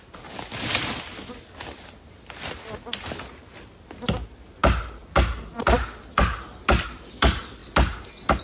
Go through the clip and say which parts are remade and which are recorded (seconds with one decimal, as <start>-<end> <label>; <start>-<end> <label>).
0.0-8.4 recorded